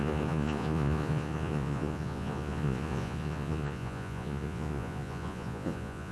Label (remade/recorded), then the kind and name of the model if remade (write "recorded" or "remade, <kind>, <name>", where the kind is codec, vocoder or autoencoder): remade, vocoder, Vocos